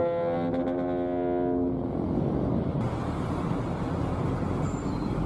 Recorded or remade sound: recorded